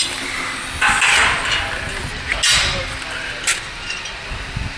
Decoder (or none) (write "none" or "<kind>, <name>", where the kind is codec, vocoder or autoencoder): none